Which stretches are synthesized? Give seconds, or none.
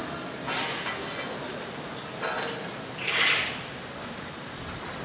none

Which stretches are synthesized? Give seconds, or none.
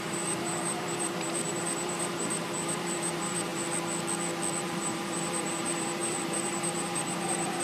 0.0-3.5 (vocoder, BigVGAN v2); 4.6-7.6